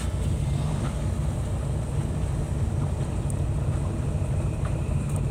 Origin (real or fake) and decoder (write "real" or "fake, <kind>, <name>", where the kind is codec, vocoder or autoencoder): real